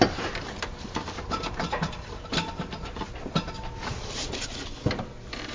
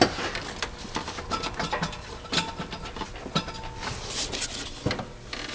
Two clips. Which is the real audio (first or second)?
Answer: second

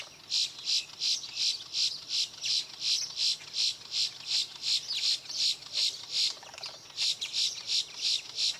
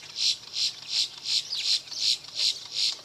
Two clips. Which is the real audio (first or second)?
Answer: first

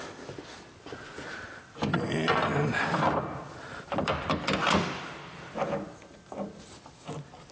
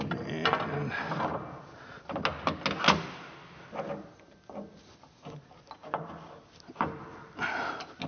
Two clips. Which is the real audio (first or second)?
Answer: second